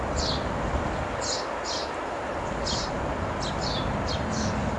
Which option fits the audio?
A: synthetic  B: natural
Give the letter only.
B